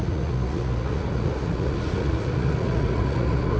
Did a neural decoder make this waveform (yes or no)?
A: yes